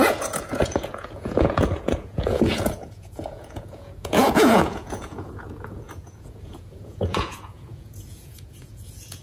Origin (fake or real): fake